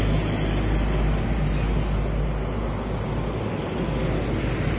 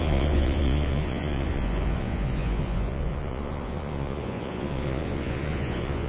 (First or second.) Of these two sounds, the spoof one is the second